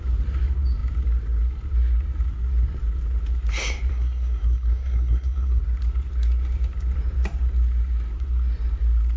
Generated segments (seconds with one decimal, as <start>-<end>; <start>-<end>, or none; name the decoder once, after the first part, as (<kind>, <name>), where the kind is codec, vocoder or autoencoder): 3.9-5.6 (codec, SNAC)